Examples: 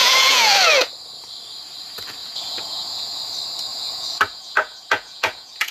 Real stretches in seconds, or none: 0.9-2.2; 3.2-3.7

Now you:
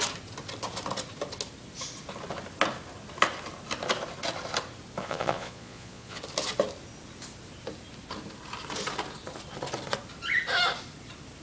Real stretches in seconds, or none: 0.0-5.0; 6.2-11.4

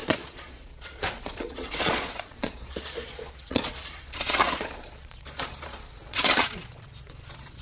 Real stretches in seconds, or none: none

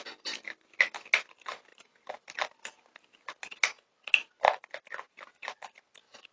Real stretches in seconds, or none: 0.0-6.3

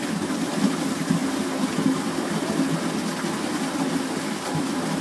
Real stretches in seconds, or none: 0.0-5.0

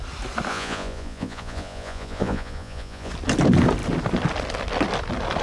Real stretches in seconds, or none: 0.0-0.5; 3.1-5.4